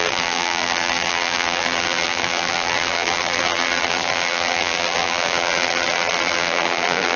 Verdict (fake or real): fake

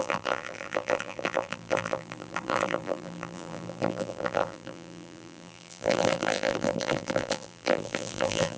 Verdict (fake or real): fake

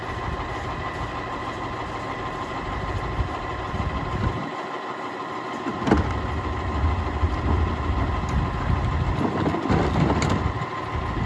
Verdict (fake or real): real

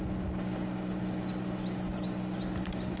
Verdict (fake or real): real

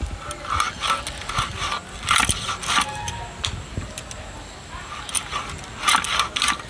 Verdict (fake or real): real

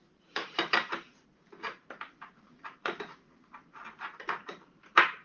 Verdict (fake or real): fake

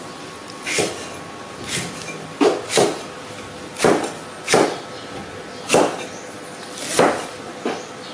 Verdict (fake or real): real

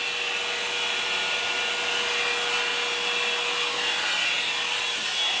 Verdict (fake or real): real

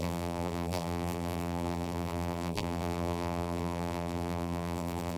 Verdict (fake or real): fake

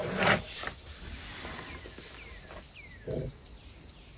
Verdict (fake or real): real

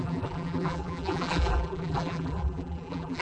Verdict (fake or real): fake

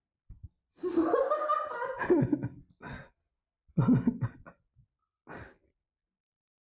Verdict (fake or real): real